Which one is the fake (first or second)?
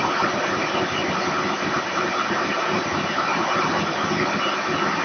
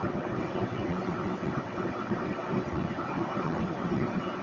second